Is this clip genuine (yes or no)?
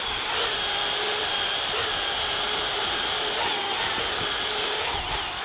yes